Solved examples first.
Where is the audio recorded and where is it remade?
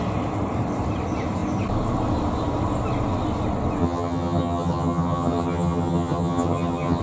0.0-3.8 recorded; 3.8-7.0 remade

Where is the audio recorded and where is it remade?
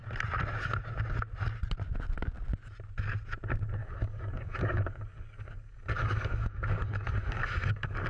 0.0-3.8 recorded; 3.8-8.1 remade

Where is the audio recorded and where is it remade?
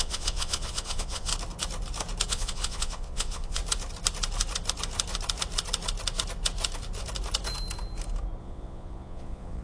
0.0-1.3 remade; 1.3-2.3 recorded; 2.3-3.6 remade; 3.6-8.4 recorded; 8.4-9.6 remade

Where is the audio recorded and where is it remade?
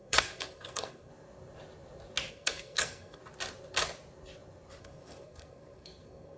0.0-1.1 remade; 1.1-2.3 recorded; 2.3-3.2 remade; 3.2-4.8 recorded; 4.8-6.4 remade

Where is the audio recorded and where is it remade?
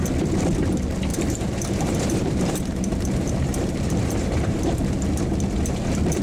0.0-1.1 recorded; 1.1-4.8 remade; 4.8-6.2 recorded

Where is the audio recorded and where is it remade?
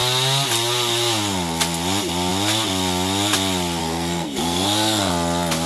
0.0-3.8 recorded; 3.8-5.1 remade; 5.1-5.7 recorded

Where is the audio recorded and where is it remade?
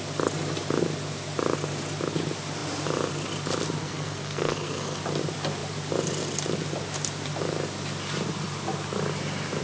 0.0-3.8 recorded; 3.8-5.0 remade; 5.0-9.6 recorded